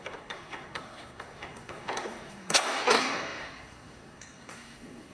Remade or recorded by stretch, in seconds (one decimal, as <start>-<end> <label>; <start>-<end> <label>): 0.0-5.1 remade